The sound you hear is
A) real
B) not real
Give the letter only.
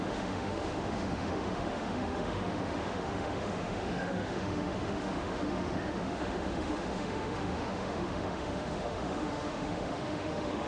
B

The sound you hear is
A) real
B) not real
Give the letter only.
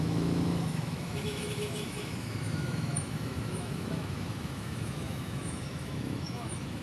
B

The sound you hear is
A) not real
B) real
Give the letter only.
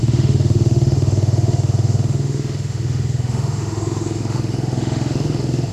A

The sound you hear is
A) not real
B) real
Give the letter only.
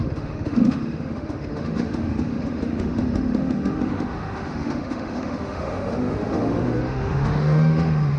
A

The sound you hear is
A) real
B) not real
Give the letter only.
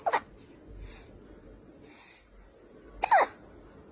A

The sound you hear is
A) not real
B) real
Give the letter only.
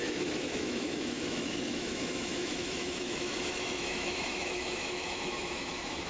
A